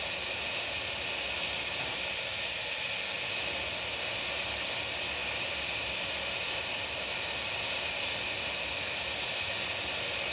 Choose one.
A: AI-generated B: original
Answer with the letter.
B